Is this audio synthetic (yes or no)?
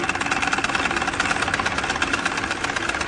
no